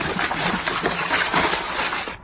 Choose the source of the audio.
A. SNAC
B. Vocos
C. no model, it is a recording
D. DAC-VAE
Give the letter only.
C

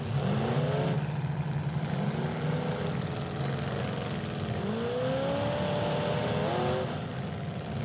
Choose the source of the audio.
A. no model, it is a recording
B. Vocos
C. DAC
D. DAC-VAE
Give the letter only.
A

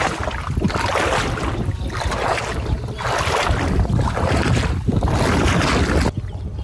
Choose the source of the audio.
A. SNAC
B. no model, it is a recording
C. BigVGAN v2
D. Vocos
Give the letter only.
B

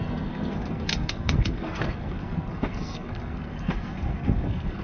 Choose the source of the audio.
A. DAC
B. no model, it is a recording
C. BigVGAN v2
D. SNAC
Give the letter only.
D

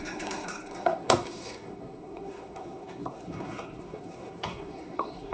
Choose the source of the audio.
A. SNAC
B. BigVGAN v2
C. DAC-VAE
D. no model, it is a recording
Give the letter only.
A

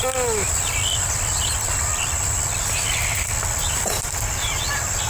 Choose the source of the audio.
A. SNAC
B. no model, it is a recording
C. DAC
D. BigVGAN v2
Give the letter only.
B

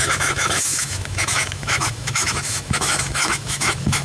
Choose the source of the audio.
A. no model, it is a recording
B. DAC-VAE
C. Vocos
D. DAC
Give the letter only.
B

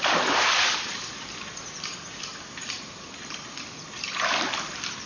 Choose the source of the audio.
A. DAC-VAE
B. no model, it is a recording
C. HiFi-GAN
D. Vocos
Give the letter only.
B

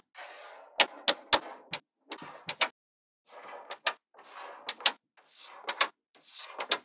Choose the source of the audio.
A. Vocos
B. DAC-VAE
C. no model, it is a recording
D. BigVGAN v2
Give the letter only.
C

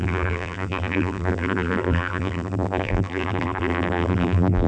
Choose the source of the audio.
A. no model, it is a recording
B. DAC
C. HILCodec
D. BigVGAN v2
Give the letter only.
D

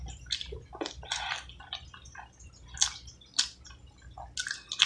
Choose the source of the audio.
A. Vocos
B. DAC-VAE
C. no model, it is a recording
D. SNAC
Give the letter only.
C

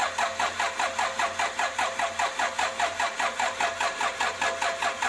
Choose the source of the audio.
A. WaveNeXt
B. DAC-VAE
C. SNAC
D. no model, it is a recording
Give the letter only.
D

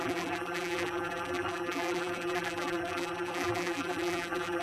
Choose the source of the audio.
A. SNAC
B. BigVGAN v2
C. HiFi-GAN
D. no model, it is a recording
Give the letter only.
B